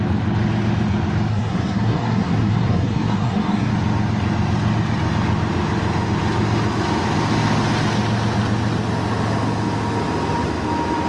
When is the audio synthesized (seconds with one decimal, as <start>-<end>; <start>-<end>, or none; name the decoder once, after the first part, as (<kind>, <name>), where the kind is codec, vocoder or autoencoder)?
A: 1.3-3.7 (codec, SNAC)